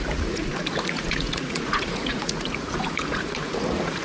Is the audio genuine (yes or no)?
no